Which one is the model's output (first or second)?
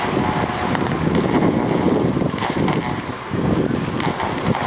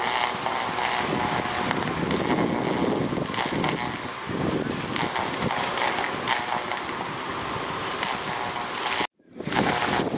first